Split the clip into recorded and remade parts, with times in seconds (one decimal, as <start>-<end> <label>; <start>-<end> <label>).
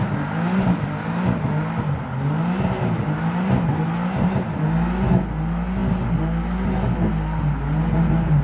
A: 0.0-8.4 recorded